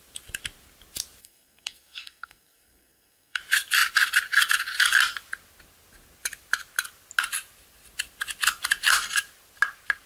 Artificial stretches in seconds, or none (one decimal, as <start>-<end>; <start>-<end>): 1.2-3.4

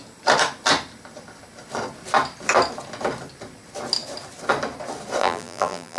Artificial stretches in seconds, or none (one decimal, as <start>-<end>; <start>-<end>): 5.2-6.0

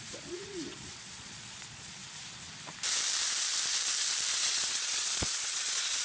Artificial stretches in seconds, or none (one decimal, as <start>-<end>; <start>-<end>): 0.0-2.0; 4.3-6.0

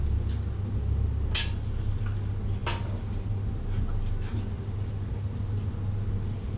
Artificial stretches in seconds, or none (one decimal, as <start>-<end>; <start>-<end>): none

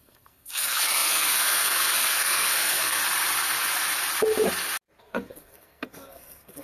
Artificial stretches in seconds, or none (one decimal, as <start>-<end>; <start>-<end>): 0.0-3.0; 5.0-6.6

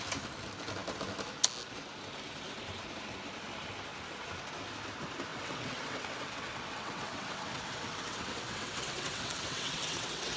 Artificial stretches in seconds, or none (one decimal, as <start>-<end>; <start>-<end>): 5.3-10.4

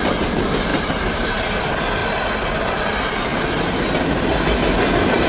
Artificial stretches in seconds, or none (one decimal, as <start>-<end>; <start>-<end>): 0.7-1.6; 2.0-2.8

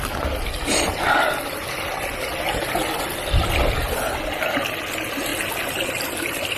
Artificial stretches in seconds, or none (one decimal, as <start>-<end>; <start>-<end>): none